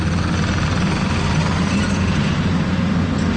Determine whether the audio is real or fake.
real